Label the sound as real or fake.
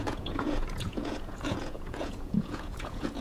fake